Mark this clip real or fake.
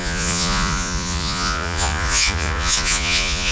fake